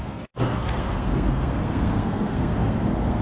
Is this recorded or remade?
remade